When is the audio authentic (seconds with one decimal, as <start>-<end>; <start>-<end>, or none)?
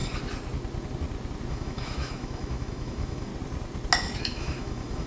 0.0-1.5; 3.3-4.2